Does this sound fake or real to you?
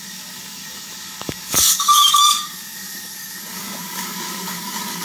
fake